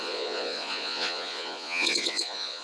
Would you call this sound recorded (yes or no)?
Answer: no